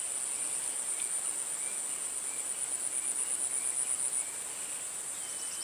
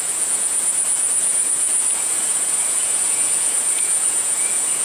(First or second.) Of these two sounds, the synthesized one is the second